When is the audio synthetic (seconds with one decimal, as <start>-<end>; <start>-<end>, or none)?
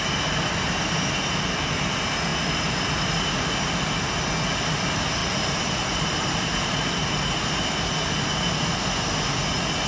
5.2-6.9